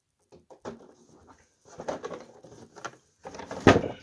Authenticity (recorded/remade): recorded